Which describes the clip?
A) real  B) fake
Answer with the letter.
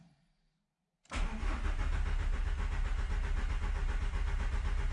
A